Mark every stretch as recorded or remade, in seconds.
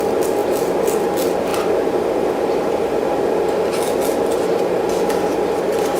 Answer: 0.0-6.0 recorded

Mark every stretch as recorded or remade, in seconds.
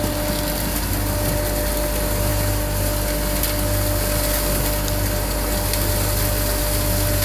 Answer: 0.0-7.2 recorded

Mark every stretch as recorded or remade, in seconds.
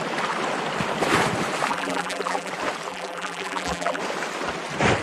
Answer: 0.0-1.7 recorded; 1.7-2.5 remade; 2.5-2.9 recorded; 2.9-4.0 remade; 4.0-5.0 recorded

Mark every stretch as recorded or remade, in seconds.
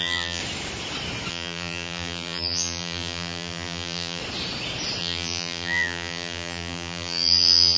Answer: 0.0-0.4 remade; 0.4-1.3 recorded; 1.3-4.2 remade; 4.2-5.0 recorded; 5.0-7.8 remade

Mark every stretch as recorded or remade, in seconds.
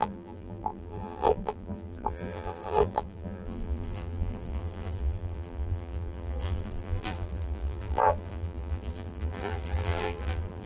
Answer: 0.0-10.7 remade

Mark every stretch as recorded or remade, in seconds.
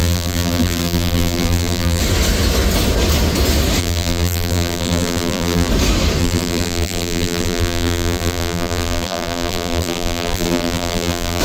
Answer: 0.0-2.0 remade; 2.0-3.8 recorded; 3.8-5.7 remade; 5.7-6.2 recorded; 6.2-11.4 remade